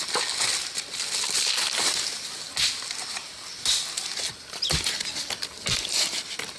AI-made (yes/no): no